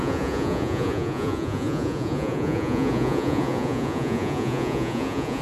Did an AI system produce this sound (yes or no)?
yes